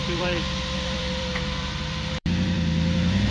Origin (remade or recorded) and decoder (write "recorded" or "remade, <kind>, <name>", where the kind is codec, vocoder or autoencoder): remade, vocoder, BigVGAN v2